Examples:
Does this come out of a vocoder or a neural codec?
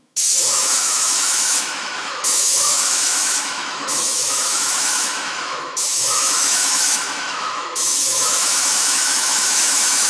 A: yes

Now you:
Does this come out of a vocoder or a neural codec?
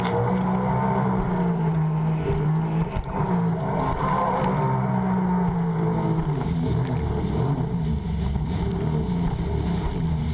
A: no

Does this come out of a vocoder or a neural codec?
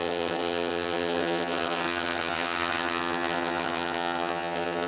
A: yes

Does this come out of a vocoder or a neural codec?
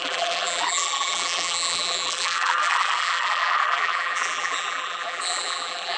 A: yes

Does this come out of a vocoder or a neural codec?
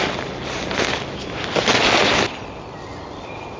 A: no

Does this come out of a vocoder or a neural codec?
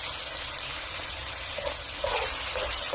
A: no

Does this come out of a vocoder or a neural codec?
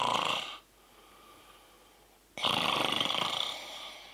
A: yes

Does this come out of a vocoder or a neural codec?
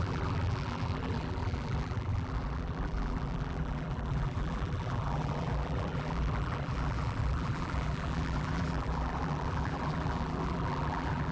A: yes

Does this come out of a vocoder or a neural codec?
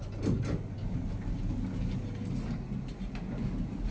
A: no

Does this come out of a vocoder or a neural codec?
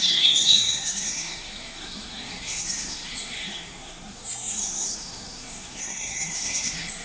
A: yes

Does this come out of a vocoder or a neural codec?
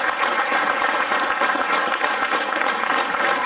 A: yes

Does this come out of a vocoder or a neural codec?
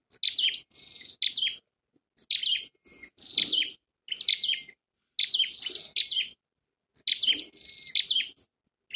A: no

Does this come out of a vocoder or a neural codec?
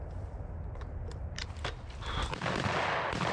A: no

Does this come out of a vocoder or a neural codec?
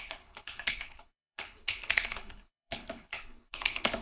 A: yes